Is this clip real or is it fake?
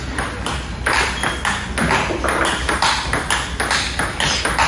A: real